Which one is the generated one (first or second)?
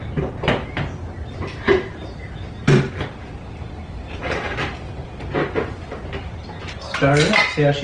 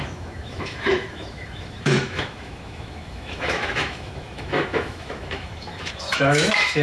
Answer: second